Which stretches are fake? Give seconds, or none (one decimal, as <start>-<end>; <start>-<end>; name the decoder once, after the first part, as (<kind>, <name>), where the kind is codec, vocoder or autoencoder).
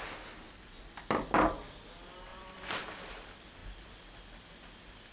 2.3-3.1 (vocoder, BigVGAN v2)